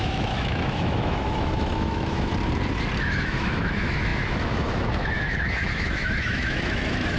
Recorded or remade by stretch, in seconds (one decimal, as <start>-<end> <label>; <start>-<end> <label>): 0.0-2.3 remade; 2.3-3.0 recorded; 3.0-7.2 remade